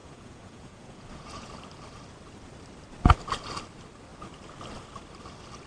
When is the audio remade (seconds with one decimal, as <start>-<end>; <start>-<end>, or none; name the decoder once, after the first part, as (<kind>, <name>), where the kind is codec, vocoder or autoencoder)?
0.0-1.5 (vocoder, Vocos)